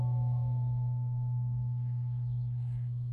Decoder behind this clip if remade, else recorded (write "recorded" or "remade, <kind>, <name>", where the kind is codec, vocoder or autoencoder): remade, codec, SNAC